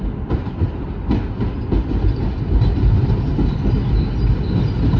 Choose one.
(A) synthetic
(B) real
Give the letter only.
B